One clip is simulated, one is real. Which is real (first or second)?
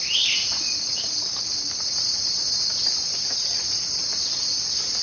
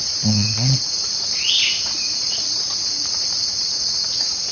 first